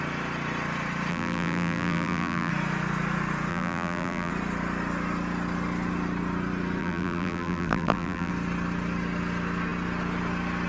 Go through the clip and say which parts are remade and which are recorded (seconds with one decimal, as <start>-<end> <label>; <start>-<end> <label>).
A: 0.0-1.1 recorded; 1.1-2.5 remade; 2.5-3.5 recorded; 3.5-4.3 remade; 4.3-6.8 recorded; 6.8-8.3 remade; 8.3-10.7 recorded